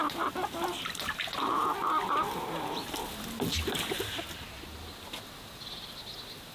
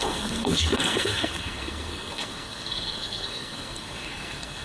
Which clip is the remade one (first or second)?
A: second